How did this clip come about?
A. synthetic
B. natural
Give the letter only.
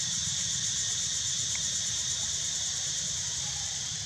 A